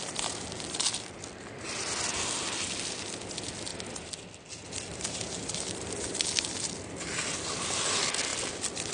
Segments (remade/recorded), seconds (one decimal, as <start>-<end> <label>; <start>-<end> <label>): 0.0-8.9 recorded